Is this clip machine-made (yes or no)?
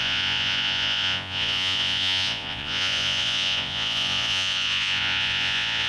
yes